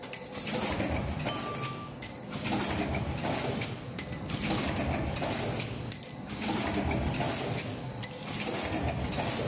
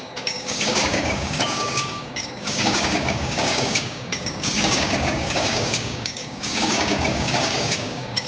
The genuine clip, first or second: first